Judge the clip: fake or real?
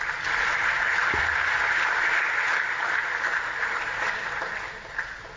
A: real